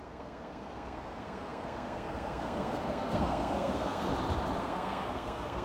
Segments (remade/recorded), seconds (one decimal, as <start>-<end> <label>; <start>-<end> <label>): 0.0-4.1 remade; 4.1-4.6 recorded; 4.6-5.6 remade